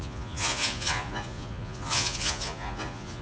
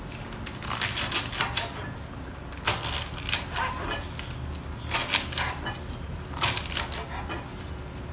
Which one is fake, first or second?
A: first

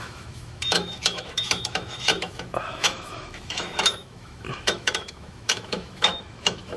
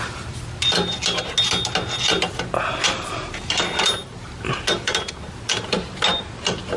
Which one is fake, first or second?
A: first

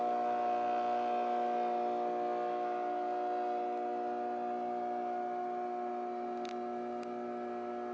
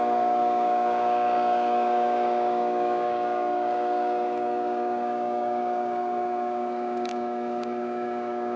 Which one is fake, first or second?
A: second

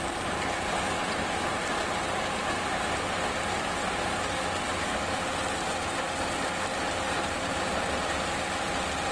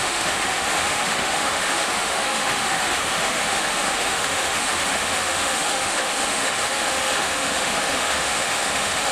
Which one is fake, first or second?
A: second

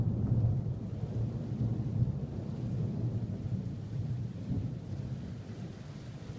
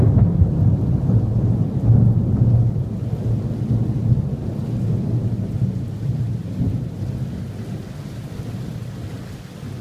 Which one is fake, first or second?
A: first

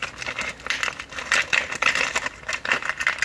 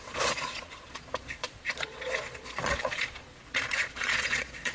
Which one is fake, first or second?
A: second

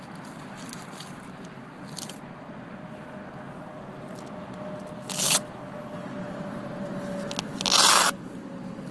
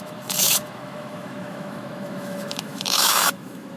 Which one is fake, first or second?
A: second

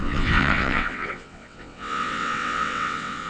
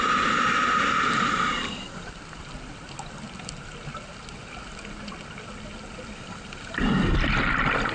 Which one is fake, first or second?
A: first